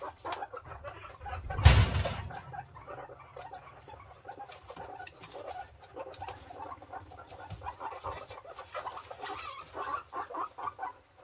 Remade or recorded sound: recorded